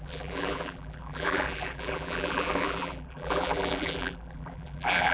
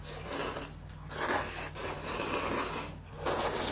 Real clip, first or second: second